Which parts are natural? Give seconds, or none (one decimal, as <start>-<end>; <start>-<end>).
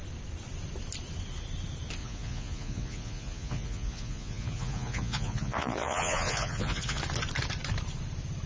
0.0-2.0; 7.0-8.5